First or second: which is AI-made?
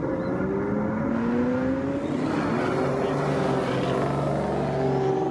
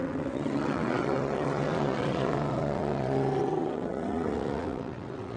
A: second